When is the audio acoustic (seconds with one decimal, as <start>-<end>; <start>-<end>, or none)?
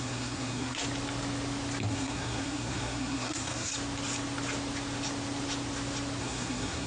0.8-1.9; 3.7-6.2